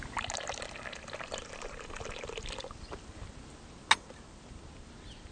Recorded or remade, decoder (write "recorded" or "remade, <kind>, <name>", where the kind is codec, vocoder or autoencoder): recorded